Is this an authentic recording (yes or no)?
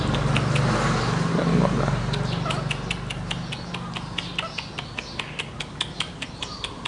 yes